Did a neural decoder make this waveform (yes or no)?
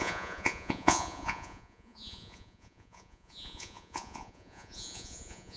yes